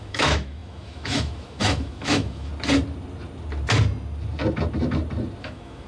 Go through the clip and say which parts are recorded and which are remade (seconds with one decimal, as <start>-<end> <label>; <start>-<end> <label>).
0.0-2.5 remade; 2.5-5.4 recorded; 5.4-5.9 remade